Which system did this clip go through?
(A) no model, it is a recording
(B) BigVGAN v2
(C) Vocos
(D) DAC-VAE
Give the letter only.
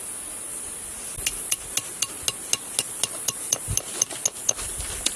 A